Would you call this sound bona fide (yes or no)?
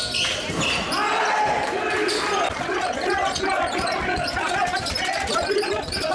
yes